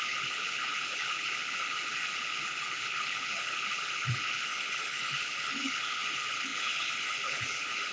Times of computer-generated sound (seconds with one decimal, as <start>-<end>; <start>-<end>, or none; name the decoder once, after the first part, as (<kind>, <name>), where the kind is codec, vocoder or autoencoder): 0.0-7.9 (codec, HILCodec)